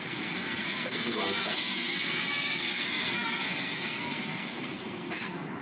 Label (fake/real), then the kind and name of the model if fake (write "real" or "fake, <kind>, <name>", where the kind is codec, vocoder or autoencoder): fake, codec, SNAC